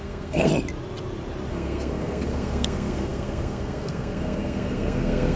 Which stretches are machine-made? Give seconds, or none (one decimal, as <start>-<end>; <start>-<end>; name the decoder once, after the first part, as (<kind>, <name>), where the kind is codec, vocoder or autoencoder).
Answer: 0.0-0.5 (codec, SNAC); 1.5-5.4